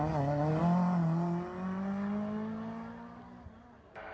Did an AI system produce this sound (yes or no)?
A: no